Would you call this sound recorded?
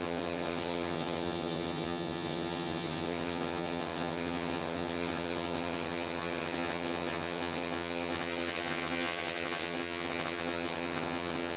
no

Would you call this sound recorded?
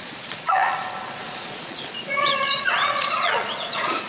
no